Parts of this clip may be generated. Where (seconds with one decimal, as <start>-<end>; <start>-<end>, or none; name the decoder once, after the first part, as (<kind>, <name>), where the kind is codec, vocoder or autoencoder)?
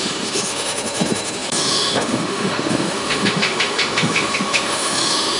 0.0-5.4 (autoencoder, DAC-VAE)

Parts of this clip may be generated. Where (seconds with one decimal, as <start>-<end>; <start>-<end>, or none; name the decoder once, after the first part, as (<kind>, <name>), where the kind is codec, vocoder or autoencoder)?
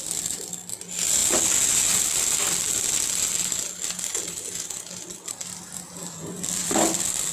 none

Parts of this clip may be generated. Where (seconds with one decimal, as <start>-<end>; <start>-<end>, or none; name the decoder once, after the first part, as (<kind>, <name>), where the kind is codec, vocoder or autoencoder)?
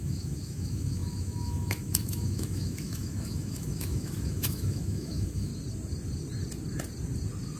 0.0-5.5 (autoencoder, DAC-VAE)